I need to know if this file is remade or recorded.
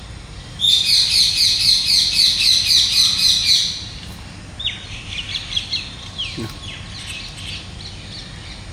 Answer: recorded